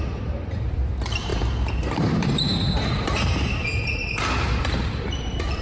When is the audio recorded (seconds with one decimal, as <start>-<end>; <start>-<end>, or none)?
1.3-1.8; 4.0-4.6